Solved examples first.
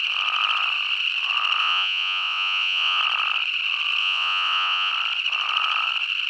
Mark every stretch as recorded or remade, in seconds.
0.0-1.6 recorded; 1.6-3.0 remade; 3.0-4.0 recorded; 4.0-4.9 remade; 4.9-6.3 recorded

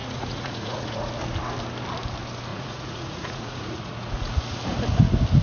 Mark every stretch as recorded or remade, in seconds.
0.0-1.1 remade; 1.1-2.5 recorded; 2.5-4.3 remade; 4.3-5.4 recorded

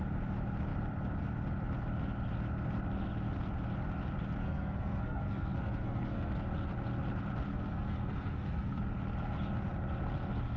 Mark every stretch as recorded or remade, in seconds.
0.0-4.4 recorded; 4.4-6.4 remade; 6.4-7.5 recorded; 7.5-8.8 remade; 8.8-10.6 recorded

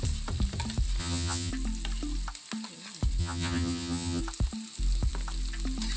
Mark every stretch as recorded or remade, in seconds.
0.0-1.0 recorded; 1.0-1.5 remade; 1.5-3.2 recorded; 3.2-4.2 remade; 4.2-6.0 recorded

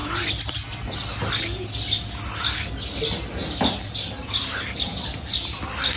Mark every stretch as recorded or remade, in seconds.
0.0-6.0 recorded